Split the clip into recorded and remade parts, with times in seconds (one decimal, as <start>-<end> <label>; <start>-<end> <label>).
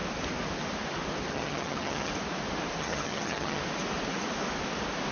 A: 0.0-1.3 recorded; 1.3-2.1 remade; 2.1-2.8 recorded; 2.8-3.6 remade; 3.6-5.1 recorded